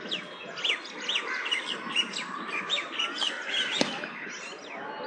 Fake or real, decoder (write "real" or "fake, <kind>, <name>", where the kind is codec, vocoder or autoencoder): real